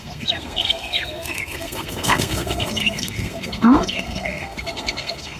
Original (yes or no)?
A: no